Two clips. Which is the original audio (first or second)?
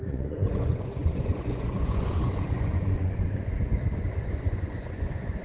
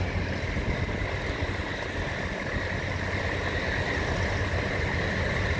second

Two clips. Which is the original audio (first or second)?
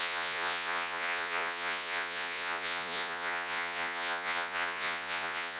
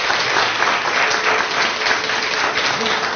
second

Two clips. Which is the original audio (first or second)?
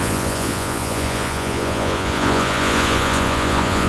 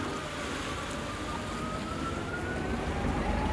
second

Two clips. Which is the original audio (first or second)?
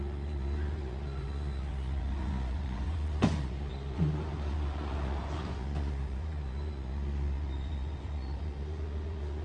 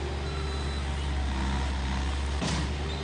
second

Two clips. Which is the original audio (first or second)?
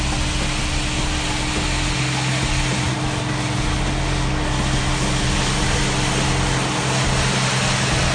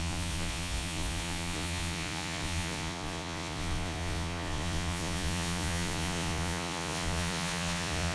first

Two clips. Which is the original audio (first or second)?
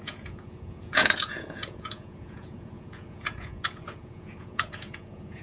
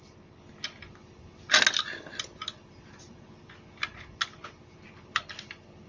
second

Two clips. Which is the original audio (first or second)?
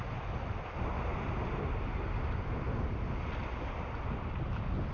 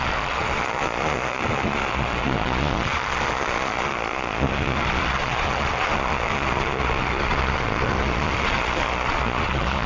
first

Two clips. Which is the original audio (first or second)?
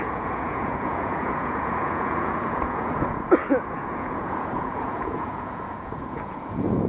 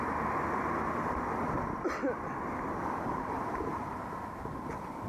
second